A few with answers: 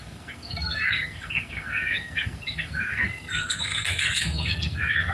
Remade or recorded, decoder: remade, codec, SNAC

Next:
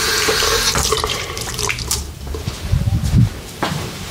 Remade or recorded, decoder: remade, vocoder, BigVGAN v2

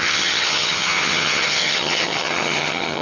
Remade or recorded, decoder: remade, vocoder, HiFi-GAN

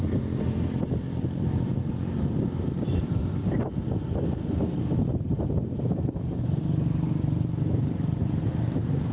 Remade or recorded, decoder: recorded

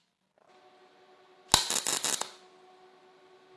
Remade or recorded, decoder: recorded